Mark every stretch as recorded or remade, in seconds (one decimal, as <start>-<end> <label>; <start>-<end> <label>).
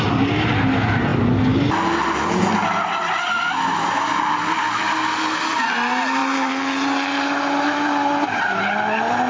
0.0-9.3 recorded